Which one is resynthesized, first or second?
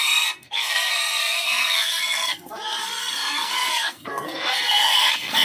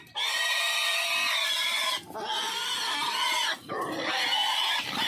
first